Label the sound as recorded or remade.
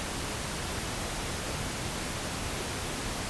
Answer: recorded